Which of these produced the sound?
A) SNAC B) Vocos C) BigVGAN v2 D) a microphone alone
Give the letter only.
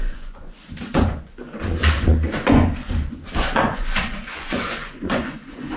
B